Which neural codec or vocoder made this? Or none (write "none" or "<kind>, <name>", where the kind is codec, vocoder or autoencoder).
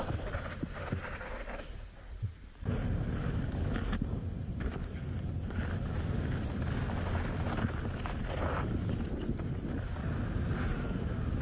none